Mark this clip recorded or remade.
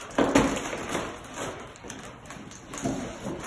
recorded